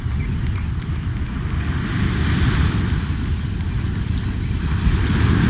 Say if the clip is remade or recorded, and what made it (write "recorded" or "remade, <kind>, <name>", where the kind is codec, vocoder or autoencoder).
recorded